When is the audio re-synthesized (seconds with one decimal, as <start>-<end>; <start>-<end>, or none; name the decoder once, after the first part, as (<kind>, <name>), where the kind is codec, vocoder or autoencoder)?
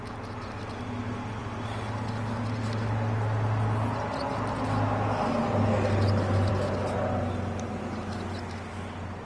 none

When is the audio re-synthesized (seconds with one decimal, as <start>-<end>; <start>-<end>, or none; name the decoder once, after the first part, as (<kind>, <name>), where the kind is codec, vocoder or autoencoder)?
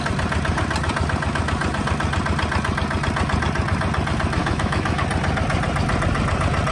4.4-5.0 (autoencoder, DAC-VAE)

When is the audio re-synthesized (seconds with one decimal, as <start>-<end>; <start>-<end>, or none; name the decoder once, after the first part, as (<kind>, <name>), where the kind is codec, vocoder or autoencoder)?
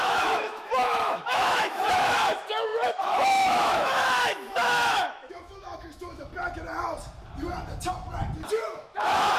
0.0-6.3 (autoencoder, DAC-VAE); 8.5-9.4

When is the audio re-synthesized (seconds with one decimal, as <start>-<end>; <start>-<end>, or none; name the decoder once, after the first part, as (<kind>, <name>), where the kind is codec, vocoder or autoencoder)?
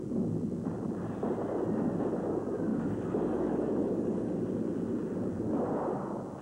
2.7-4.4 (codec, DAC)